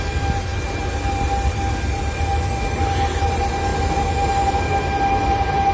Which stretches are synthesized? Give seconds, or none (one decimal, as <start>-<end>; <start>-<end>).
none